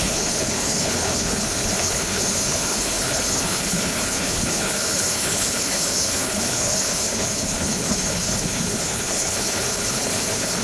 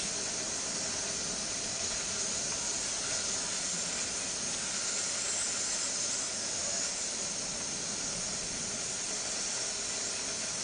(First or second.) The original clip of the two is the second